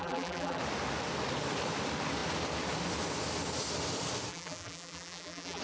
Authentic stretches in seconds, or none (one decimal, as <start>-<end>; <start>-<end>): 0.6-4.3